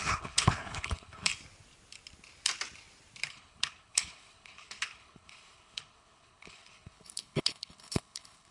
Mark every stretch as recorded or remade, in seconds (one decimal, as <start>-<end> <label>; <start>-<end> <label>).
0.0-1.3 remade; 1.3-3.3 recorded; 3.3-8.5 remade